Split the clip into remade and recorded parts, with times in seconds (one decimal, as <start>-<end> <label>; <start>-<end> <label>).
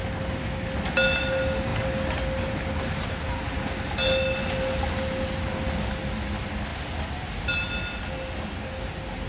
0.0-9.3 recorded